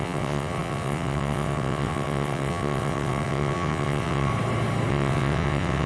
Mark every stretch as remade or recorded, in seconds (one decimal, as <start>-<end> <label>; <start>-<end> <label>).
0.0-4.3 remade; 4.3-4.9 recorded; 4.9-5.9 remade